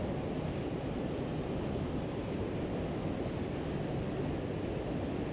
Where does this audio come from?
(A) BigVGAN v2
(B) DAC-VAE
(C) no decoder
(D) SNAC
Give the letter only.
C